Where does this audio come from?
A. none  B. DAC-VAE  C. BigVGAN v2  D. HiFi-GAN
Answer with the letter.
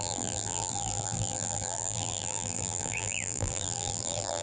C